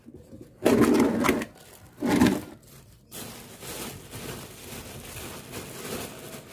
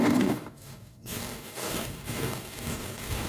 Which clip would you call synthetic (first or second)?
second